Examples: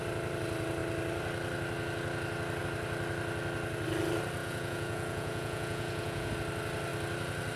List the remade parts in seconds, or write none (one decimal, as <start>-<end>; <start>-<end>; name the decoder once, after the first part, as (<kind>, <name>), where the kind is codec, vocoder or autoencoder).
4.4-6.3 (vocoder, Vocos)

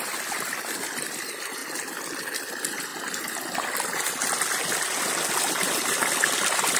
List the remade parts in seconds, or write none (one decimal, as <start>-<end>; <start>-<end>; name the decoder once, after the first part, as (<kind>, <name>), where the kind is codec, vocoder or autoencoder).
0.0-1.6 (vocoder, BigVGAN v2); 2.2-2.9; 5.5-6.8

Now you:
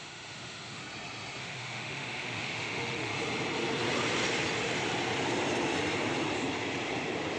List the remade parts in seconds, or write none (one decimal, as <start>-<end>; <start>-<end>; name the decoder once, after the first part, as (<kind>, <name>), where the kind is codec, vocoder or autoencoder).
0.0-0.8 (autoencoder, DAC-VAE); 1.4-3.1

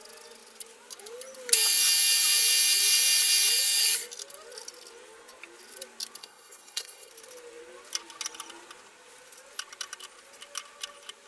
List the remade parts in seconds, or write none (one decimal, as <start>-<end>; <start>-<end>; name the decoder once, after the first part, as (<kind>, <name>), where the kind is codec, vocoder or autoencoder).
6.2-7.1 (codec, SNAC)

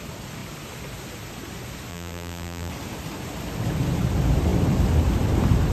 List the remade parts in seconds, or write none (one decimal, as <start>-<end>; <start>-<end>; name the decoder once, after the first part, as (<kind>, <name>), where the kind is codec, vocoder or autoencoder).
1.9-2.7 (vocoder, BigVGAN v2)